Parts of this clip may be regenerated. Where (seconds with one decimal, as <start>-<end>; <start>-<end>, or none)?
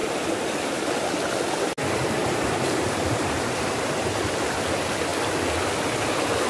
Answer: 0.0-1.1; 2.2-4.5